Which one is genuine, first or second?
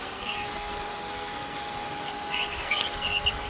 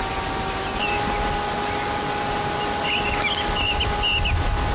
second